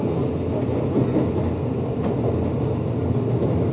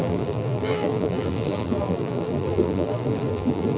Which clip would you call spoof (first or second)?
second